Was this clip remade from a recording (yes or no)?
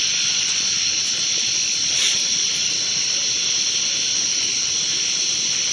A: no